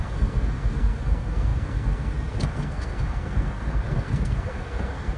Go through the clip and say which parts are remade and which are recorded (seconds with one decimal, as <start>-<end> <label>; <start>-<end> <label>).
0.0-5.2 remade